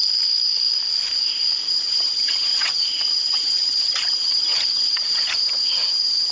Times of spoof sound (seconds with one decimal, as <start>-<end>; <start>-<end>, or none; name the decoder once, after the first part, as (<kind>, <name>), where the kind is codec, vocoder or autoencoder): 1.7-6.3 (vocoder, HiFi-GAN)